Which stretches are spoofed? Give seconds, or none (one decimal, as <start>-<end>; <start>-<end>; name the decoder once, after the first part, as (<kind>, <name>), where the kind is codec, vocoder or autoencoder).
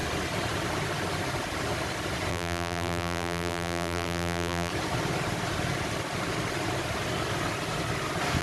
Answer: 2.3-4.7 (vocoder, BigVGAN v2)